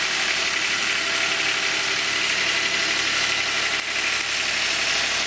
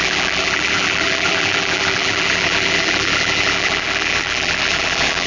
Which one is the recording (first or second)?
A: first